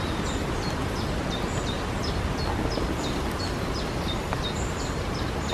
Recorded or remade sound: recorded